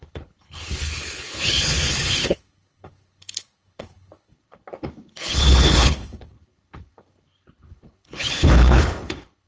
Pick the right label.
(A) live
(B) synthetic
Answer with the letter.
B